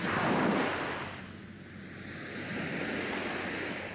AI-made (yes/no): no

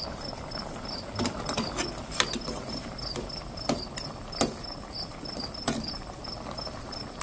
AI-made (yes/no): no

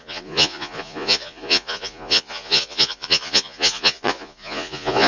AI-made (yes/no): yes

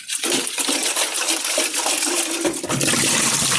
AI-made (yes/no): no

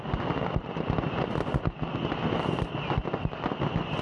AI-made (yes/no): no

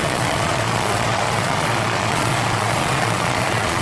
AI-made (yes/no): yes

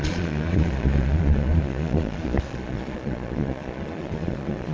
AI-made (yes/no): yes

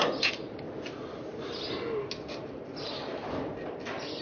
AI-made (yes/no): no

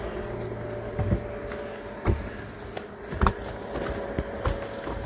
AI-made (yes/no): no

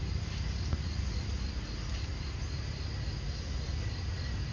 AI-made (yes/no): no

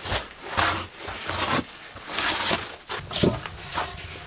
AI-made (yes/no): no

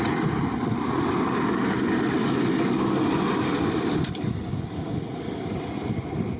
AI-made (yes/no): no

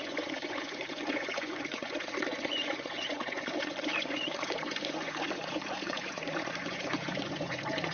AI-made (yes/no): yes